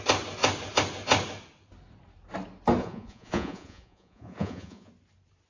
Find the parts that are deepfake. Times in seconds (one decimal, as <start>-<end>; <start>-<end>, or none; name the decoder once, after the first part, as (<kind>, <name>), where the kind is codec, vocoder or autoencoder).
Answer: 2.8-4.9 (vocoder, Vocos)